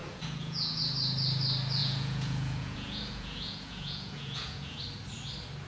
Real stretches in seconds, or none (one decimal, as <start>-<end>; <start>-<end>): 0.8-1.8; 4.8-5.7